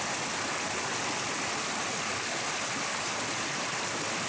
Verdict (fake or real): real